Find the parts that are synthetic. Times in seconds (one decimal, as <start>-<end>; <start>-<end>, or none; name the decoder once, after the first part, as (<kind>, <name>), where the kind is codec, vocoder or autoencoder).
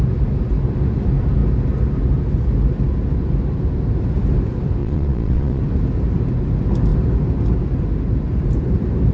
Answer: 4.8-5.6 (vocoder, Vocos)